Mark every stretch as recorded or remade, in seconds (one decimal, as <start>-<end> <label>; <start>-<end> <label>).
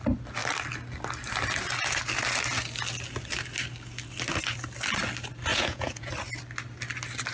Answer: 0.0-5.5 recorded; 5.5-6.1 remade; 6.1-7.3 recorded